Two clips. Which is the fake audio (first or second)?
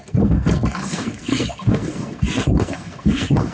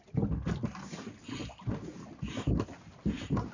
first